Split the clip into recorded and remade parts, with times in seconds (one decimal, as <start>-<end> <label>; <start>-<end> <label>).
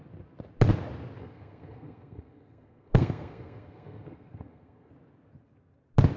0.0-1.2 recorded; 1.2-4.9 remade; 4.9-6.2 recorded